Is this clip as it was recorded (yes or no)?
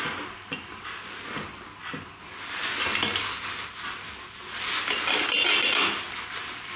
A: yes